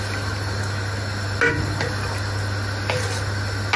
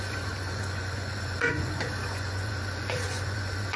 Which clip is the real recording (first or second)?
first